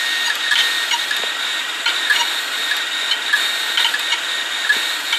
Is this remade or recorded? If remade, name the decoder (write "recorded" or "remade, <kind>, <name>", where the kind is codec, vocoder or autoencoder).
recorded